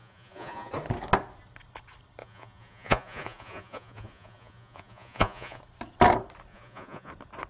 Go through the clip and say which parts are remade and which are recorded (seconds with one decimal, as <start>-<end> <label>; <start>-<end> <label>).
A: 0.0-0.7 remade; 0.7-2.2 recorded; 2.2-5.6 remade; 5.6-6.5 recorded; 6.5-7.1 remade; 7.1-7.5 recorded